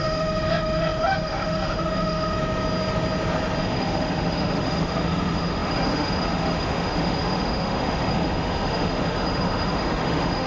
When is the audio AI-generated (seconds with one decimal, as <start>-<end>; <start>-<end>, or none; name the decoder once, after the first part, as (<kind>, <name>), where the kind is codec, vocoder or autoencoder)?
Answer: 0.0-2.4 (autoencoder, DAC-VAE); 3.6-10.5